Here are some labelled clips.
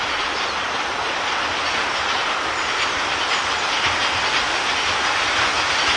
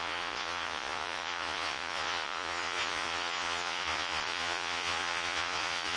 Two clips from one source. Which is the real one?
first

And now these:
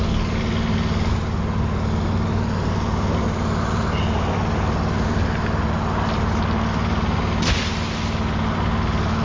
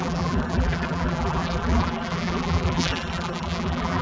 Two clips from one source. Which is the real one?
first